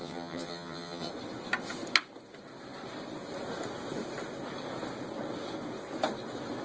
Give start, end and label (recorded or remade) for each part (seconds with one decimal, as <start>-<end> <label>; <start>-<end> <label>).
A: 0.0-1.1 remade; 1.1-6.6 recorded